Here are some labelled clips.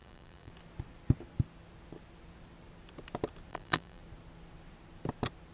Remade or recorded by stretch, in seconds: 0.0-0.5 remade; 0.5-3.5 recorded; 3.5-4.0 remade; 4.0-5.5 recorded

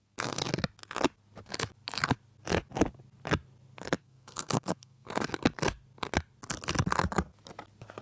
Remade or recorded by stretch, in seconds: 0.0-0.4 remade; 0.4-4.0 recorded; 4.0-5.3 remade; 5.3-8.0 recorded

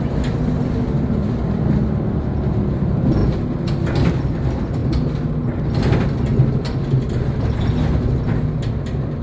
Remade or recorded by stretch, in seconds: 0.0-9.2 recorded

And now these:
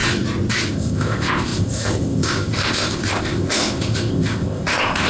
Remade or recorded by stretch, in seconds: 0.0-0.7 recorded; 0.7-5.1 remade